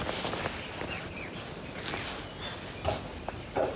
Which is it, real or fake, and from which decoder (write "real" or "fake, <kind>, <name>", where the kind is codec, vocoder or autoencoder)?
real